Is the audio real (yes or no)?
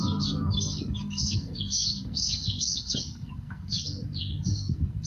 no